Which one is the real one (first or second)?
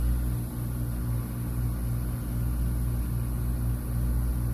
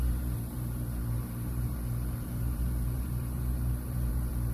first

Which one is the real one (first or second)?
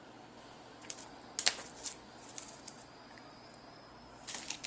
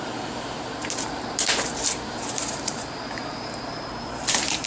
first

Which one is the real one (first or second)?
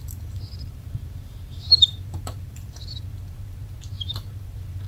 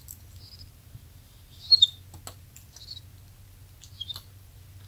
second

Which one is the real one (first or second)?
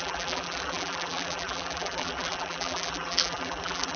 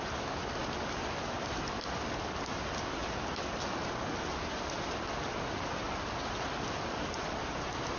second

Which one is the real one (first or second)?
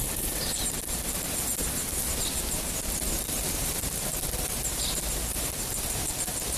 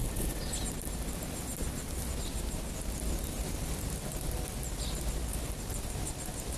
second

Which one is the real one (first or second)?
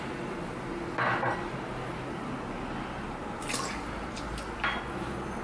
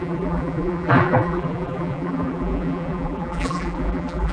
first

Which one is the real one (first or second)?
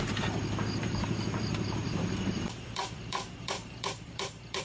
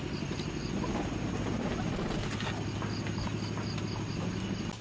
second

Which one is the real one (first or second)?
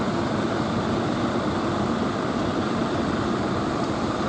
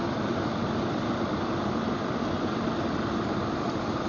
second